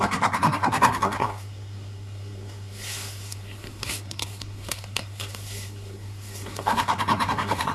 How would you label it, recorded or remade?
remade